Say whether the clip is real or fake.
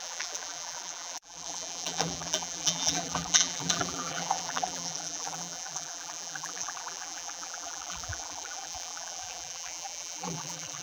fake